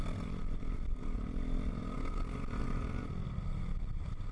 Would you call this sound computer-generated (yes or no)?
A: no